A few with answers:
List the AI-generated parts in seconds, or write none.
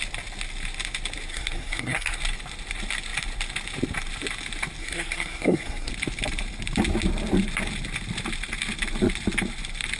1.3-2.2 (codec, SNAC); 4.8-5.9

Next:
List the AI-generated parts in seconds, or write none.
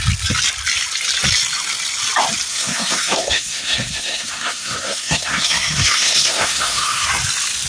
2.5-7.1 (codec, SNAC)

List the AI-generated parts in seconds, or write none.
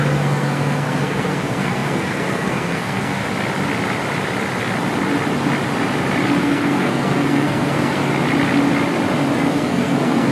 0.0-3.2 (codec, SNAC); 6.4-8.1; 9.5-10.3